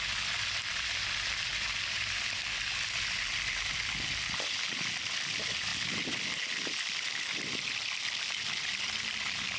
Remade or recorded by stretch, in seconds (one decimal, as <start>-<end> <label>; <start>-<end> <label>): 0.0-9.6 recorded